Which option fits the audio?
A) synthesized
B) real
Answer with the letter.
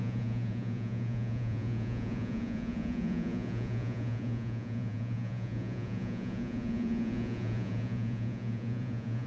A